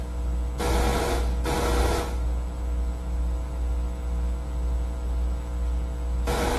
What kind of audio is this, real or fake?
real